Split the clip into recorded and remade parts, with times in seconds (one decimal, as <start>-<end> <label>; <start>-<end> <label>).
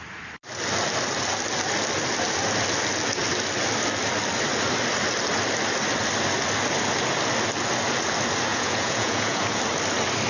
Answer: 0.0-8.5 recorded; 8.5-9.6 remade; 9.6-10.3 recorded